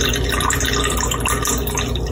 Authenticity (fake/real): real